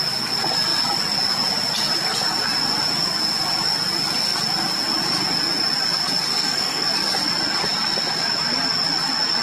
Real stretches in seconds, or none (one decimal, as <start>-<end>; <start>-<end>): 0.0-6.3; 6.9-9.4